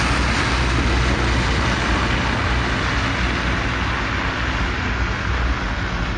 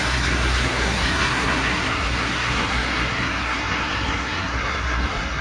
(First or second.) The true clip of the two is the first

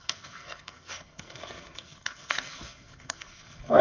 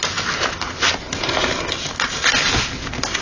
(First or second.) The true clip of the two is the second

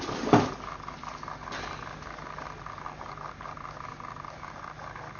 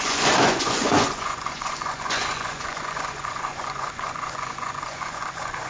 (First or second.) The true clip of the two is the first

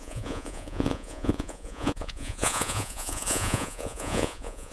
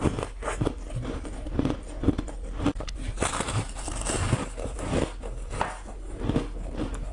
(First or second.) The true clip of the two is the second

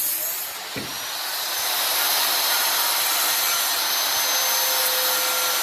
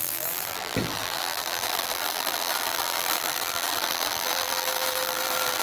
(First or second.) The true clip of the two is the first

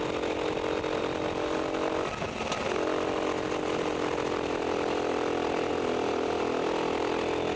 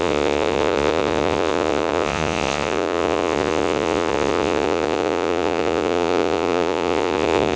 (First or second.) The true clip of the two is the first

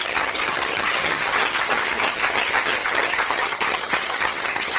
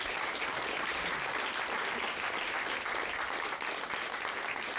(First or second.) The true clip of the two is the second